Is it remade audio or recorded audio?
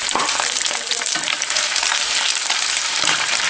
remade